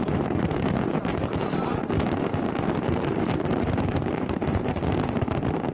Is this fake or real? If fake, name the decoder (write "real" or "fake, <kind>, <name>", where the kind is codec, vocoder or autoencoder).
fake, vocoder, BigVGAN v2